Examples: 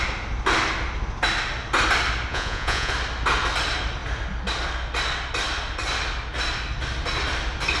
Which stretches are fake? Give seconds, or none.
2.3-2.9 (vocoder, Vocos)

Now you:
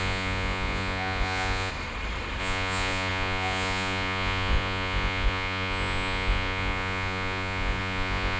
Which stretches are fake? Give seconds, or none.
0.0-1.7 (vocoder, Vocos); 2.4-8.4

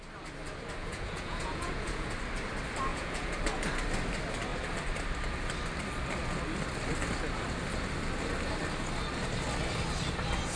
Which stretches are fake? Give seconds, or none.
0.8-2.1 (vocoder, Vocos); 2.9-3.4

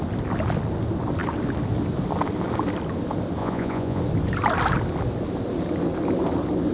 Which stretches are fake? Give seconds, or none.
3.4-4.0 (vocoder, Vocos)

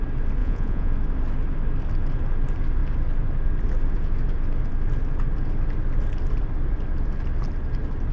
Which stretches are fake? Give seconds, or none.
0.4-0.9 (vocoder, Vocos)

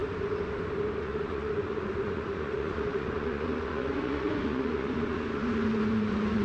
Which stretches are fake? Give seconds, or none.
1.0-6.4 (vocoder, Vocos)